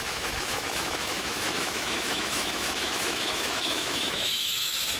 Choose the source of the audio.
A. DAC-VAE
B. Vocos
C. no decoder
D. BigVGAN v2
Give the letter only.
A